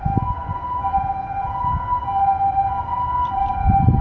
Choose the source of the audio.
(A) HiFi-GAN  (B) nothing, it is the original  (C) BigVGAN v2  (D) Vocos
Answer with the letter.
B